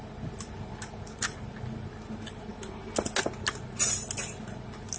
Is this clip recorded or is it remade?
recorded